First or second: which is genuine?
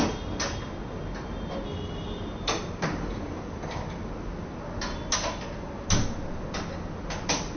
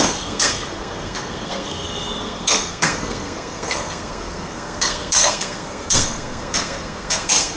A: first